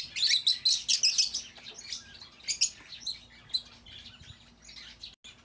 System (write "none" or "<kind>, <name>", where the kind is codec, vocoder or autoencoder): none